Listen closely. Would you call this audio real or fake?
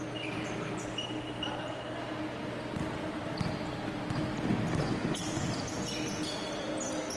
real